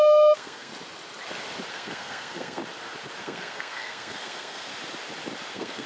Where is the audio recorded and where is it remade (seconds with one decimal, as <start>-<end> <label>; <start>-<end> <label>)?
0.0-0.7 remade; 0.7-1.7 recorded; 1.7-2.6 remade; 2.6-3.2 recorded; 3.2-4.7 remade; 4.7-5.5 recorded; 5.5-5.9 remade

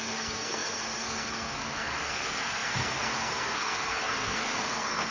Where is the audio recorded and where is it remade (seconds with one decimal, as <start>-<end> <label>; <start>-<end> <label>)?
0.0-5.1 remade